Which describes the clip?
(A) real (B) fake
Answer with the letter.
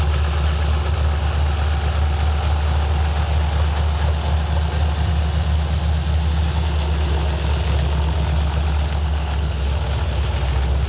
A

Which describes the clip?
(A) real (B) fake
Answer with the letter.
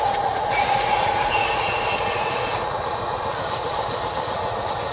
B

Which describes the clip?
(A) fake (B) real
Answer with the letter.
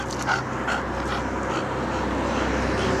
B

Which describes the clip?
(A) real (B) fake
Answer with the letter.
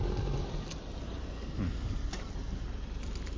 A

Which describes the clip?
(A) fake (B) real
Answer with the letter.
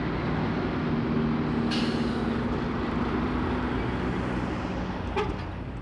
B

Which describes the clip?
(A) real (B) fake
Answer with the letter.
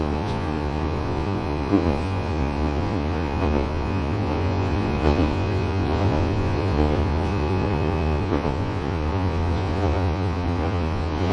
B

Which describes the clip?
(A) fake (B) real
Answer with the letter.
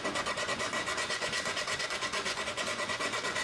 A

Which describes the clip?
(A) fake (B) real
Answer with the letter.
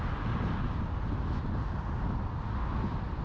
B